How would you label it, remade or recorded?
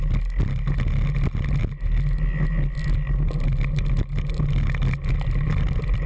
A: recorded